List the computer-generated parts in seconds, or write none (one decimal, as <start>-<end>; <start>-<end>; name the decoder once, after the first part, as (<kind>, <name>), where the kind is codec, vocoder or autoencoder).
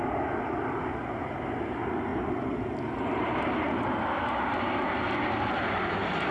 none